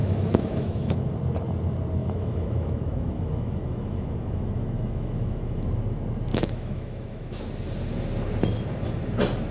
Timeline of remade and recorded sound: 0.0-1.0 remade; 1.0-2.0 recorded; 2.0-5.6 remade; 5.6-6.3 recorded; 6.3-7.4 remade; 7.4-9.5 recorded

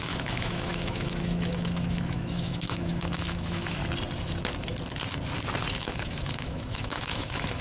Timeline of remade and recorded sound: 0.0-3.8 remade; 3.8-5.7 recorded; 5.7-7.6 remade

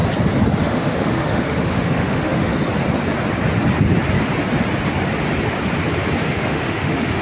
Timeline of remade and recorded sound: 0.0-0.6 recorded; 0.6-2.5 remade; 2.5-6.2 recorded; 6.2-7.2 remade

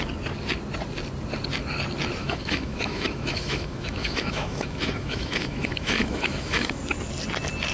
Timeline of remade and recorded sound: 0.0-2.2 recorded; 2.2-6.8 remade; 6.8-7.7 recorded

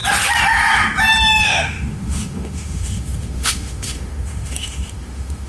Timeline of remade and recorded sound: 0.0-1.4 recorded; 1.4-5.5 remade

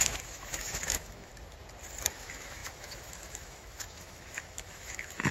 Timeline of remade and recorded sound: 0.0-1.3 remade; 1.3-2.1 recorded; 2.1-5.3 remade

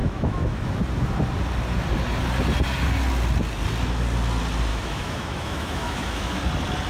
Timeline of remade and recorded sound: 0.0-0.7 remade; 0.7-4.7 recorded; 4.7-6.4 remade; 6.4-6.9 recorded